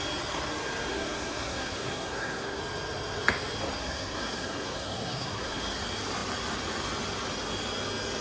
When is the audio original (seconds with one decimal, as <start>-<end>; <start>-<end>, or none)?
0.0-0.9; 2.6-3.8; 5.6-8.2